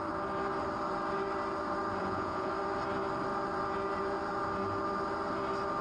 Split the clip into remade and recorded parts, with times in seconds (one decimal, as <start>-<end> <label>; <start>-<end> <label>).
0.0-2.0 recorded; 2.0-2.5 remade; 2.5-5.8 recorded